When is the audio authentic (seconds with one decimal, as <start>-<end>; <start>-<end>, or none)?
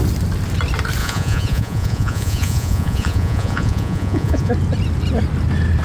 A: 0.0-1.0; 4.5-5.8